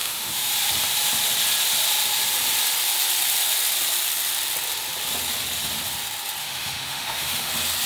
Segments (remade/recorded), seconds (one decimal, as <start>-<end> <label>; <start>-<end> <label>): 0.0-0.5 remade; 0.5-6.4 recorded; 6.4-7.5 remade; 7.5-7.9 recorded